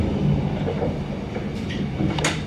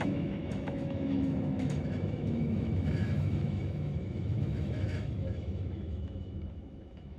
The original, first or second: first